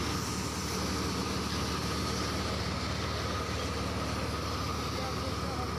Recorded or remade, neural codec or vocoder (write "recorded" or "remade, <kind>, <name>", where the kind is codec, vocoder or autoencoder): recorded